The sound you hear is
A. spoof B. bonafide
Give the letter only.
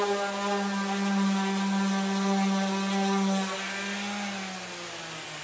B